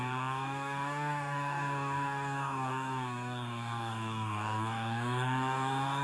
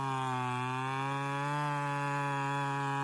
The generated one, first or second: first